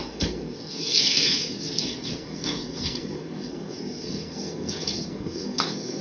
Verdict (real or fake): fake